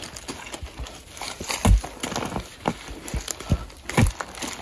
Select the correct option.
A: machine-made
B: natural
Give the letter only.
B